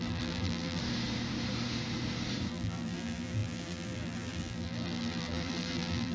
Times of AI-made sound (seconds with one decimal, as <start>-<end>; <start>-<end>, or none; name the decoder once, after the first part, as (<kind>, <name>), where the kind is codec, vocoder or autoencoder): 0.0-0.8 (vocoder, BigVGAN v2); 2.5-6.1